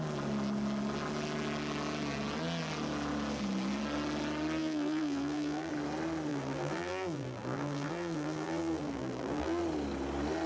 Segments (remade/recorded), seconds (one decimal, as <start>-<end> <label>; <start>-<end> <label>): 0.0-4.6 recorded; 4.6-5.7 remade; 5.7-6.3 recorded; 6.3-9.6 remade; 9.6-10.5 recorded